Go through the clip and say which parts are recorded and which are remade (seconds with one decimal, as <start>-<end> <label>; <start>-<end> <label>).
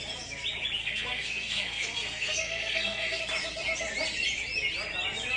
0.0-0.8 recorded; 0.8-3.2 remade; 3.2-5.4 recorded